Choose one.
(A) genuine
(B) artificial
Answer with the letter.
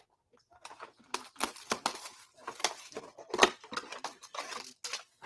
A